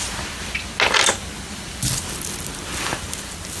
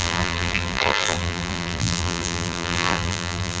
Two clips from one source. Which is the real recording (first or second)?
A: first